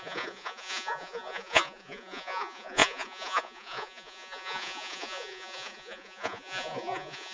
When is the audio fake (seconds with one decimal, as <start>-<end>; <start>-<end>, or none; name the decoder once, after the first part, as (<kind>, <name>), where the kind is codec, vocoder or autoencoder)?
0.0-7.3 (vocoder, Vocos)